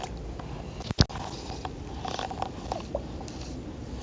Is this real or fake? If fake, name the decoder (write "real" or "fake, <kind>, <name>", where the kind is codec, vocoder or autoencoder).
real